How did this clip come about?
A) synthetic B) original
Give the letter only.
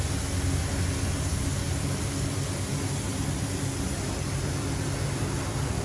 B